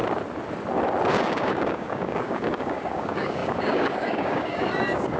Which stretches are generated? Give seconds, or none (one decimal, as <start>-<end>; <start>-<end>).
1.1-5.2